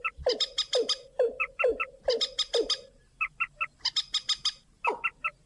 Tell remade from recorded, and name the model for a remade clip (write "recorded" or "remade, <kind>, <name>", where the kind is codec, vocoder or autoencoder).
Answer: recorded